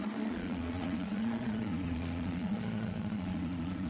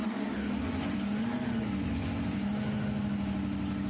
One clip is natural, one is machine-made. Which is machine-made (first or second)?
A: first